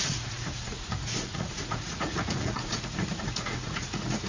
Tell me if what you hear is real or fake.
fake